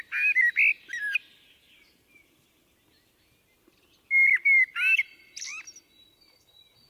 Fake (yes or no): no